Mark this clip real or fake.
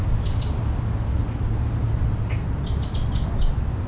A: real